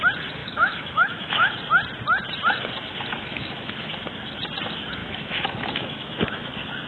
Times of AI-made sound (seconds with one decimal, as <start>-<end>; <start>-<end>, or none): 0.4-1.5; 3.3-3.9; 5.0-6.5